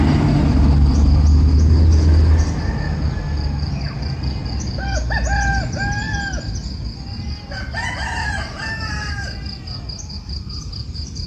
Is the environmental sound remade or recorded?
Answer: recorded